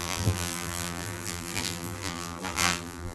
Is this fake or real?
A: fake